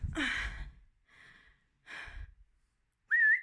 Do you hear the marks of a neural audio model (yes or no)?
no